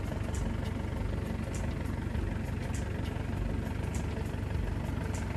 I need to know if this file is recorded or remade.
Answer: recorded